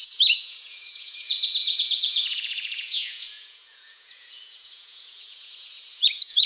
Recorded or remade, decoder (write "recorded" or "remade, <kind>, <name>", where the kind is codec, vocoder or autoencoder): remade, vocoder, Vocos